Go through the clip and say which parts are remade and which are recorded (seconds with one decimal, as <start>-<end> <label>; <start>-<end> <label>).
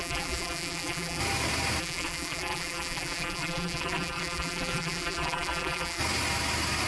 0.0-1.2 remade; 1.2-1.8 recorded; 1.8-6.0 remade; 6.0-6.9 recorded